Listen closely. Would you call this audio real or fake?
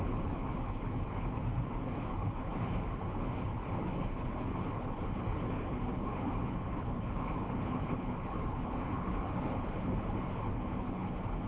fake